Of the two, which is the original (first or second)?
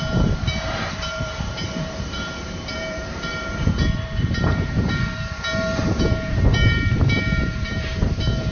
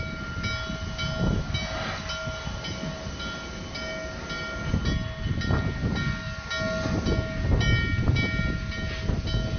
second